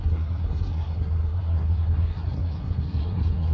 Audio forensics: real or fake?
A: fake